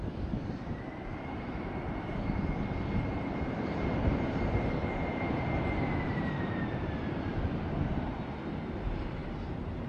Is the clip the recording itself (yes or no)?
no